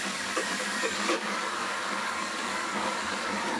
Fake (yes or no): yes